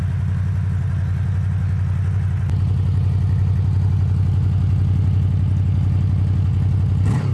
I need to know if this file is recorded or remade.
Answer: recorded